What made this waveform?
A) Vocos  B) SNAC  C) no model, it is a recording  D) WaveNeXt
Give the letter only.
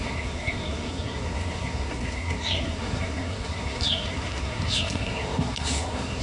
B